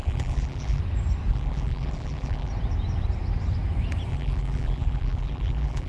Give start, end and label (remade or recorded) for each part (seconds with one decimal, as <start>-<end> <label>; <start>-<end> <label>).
0.0-0.8 remade; 0.8-1.3 recorded; 1.3-2.5 remade; 2.5-4.1 recorded; 4.1-5.9 remade